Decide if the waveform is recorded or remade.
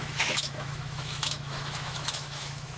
remade